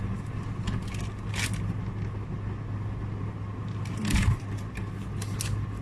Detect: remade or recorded recorded